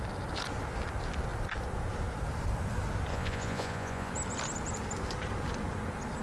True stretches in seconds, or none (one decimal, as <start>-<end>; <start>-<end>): 0.0-3.1; 4.1-6.2